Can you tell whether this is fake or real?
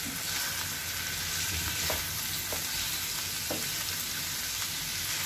real